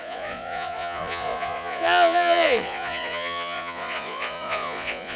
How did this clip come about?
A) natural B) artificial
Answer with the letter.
B